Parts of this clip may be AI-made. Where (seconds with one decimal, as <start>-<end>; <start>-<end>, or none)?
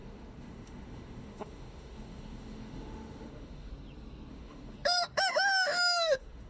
0.0-3.7; 4.3-6.5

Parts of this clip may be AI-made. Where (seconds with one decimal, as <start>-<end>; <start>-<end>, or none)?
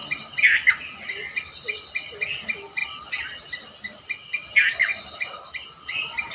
none